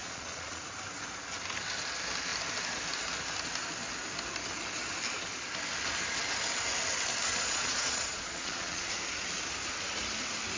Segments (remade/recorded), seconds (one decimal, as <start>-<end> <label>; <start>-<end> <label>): 0.0-0.6 remade; 0.6-7.3 recorded; 7.3-8.9 remade; 8.9-10.6 recorded